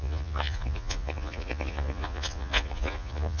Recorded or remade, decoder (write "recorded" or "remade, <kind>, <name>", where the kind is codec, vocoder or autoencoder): remade, vocoder, Vocos